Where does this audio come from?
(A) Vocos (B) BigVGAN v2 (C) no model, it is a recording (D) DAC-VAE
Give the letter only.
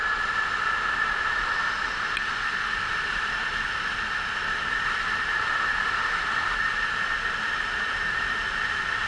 C